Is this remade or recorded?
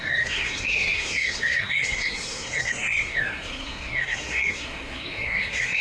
remade